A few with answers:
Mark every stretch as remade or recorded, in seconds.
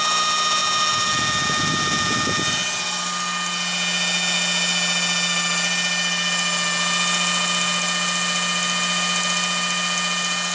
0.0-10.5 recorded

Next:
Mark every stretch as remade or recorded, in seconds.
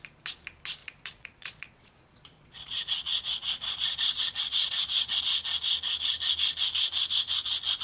0.0-0.8 recorded; 0.8-5.2 remade; 5.2-7.8 recorded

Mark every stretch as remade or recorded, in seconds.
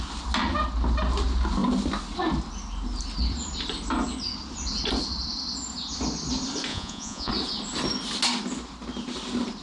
0.0-6.7 recorded; 6.7-7.3 remade; 7.3-9.6 recorded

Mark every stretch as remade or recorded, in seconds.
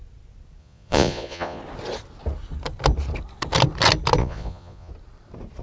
0.0-0.6 recorded; 0.6-1.6 remade; 1.6-4.2 recorded; 4.2-4.9 remade; 4.9-5.6 recorded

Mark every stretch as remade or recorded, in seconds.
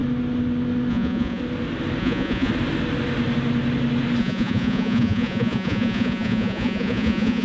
0.0-0.9 recorded; 0.9-1.4 remade; 1.4-2.0 recorded; 2.0-2.5 remade; 2.5-4.2 recorded; 4.2-7.4 remade